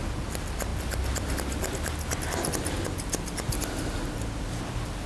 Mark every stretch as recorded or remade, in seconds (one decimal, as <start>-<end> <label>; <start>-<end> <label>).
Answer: 0.0-5.1 recorded

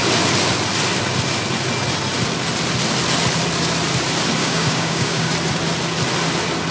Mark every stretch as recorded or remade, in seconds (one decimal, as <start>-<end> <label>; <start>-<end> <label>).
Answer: 0.0-4.4 recorded; 4.4-5.3 remade; 5.3-6.7 recorded

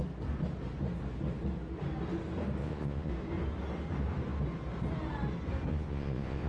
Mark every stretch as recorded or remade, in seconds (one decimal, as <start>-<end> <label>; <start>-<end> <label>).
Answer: 0.0-2.6 recorded; 2.6-3.1 remade; 3.1-5.7 recorded; 5.7-6.5 remade

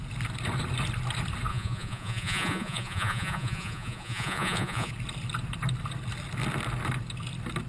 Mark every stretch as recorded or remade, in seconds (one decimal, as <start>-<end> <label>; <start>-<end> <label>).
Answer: 0.0-1.5 recorded; 1.5-4.9 remade; 4.9-7.7 recorded

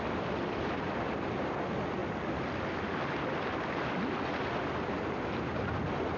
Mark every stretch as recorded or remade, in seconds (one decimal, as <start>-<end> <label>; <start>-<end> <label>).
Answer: 0.0-6.2 recorded